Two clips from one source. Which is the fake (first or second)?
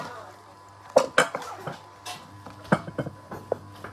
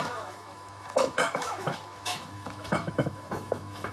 second